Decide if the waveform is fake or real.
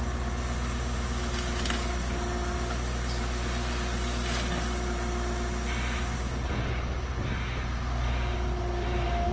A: real